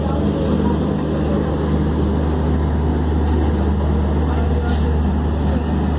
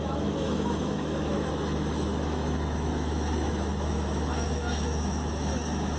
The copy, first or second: second